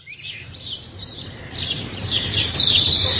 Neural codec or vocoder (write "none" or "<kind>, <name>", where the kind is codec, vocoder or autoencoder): vocoder, BigVGAN v2